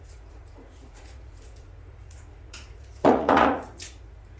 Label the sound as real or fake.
fake